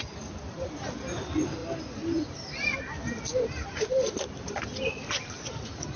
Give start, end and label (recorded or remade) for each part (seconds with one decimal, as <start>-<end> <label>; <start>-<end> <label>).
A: 0.0-6.0 recorded